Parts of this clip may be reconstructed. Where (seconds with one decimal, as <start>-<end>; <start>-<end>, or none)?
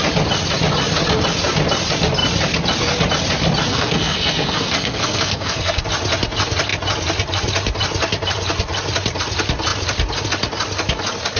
3.7-5.8